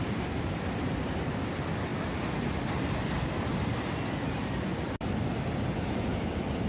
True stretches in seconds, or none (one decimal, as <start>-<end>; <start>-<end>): 1.9-5.6